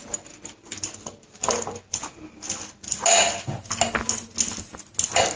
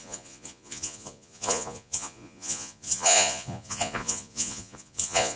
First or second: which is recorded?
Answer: first